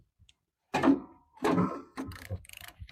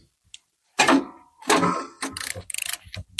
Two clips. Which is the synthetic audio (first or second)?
first